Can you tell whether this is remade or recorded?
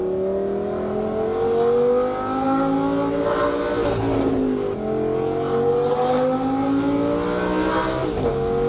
recorded